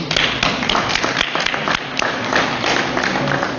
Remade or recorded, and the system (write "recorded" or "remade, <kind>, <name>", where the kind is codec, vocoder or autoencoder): recorded